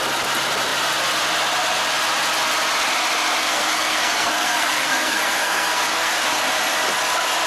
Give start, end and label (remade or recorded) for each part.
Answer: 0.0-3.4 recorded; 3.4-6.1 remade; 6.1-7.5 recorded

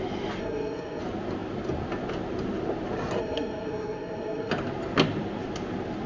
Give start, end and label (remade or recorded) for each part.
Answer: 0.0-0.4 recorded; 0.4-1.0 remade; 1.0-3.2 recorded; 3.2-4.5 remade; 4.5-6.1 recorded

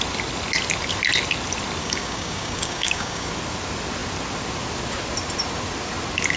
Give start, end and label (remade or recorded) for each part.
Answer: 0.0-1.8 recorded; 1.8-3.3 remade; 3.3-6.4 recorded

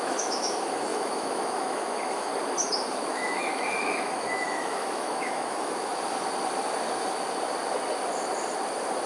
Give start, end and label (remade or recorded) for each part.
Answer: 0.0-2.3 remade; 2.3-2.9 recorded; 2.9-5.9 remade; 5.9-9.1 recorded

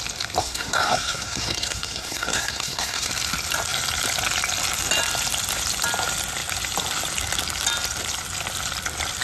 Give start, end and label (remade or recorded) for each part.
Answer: 0.0-0.4 recorded; 0.4-3.1 remade; 3.1-9.2 recorded

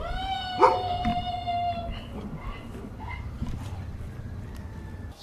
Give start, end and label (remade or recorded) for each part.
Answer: 0.0-5.2 recorded